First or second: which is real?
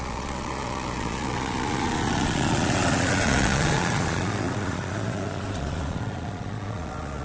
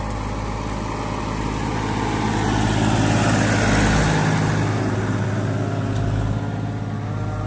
second